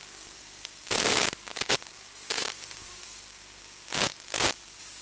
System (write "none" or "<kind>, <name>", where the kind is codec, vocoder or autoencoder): codec, DAC